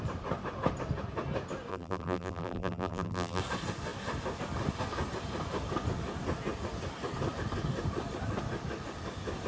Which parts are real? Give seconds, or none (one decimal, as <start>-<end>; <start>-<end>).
0.0-1.7; 3.4-9.5